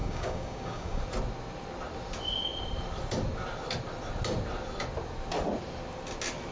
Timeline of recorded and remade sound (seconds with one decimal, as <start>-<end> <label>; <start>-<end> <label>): 0.0-1.0 remade; 1.0-6.5 recorded